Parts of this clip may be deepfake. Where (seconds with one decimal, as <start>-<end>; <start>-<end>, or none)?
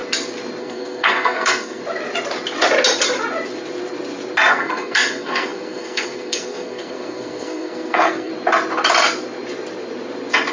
0.6-1.8; 4.5-8.3